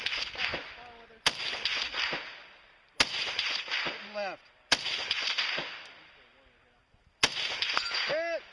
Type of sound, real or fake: real